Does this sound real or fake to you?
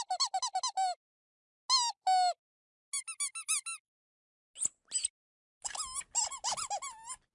real